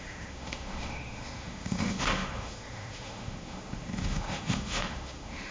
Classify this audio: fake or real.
fake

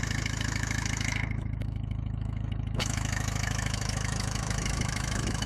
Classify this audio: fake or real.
fake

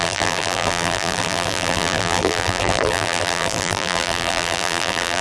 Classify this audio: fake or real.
fake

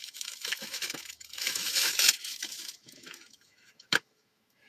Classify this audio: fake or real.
fake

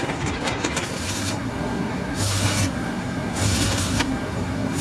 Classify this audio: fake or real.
fake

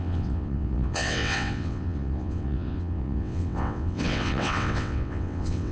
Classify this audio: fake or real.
fake